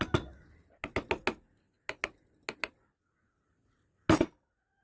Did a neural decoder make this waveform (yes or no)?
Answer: no